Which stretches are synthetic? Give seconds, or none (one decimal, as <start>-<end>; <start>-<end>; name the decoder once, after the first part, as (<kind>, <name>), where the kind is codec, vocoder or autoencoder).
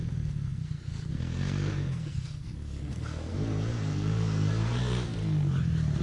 0.0-5.2 (codec, SNAC)